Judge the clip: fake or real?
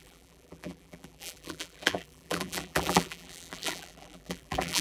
fake